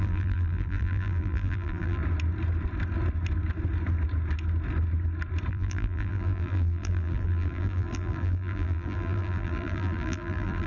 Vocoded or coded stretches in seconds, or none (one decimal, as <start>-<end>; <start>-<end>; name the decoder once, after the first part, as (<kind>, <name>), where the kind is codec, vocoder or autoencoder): 0.0-2.0 (vocoder, BigVGAN v2); 5.5-10.7